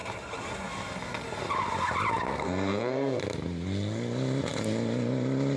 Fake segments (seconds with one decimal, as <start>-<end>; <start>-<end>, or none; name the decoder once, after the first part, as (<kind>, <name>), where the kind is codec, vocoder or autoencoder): 2.3-3.2 (codec, SNAC)